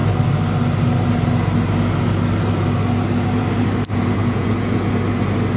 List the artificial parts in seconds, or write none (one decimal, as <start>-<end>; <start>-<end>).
4.2-4.9